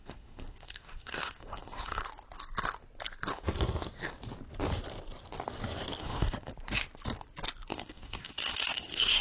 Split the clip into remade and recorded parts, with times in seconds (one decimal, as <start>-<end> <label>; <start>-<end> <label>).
0.0-2.0 remade; 2.0-6.0 recorded; 6.0-6.5 remade; 6.5-7.7 recorded; 7.7-9.2 remade